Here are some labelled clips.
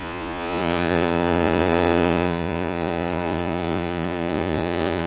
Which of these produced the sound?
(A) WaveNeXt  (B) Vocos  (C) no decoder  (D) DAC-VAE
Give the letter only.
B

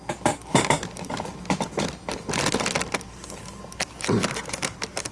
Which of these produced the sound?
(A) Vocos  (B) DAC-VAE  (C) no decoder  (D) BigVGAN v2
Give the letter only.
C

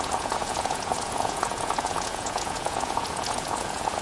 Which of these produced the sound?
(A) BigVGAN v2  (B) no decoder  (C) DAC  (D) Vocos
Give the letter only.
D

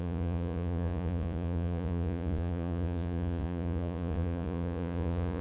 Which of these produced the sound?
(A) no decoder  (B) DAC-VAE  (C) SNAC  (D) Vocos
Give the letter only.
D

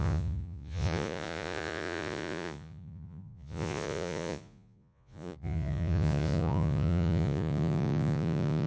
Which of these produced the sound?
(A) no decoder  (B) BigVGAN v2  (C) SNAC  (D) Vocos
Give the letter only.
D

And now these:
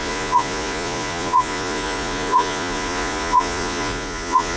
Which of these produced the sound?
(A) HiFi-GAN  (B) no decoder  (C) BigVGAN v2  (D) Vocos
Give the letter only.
D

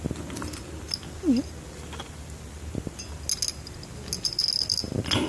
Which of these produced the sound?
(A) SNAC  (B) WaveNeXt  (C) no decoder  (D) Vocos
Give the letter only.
C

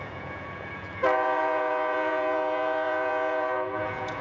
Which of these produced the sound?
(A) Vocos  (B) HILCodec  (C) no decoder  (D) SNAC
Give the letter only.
A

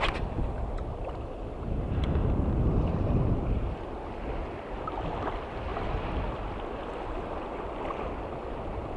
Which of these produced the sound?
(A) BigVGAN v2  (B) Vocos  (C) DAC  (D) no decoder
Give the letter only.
D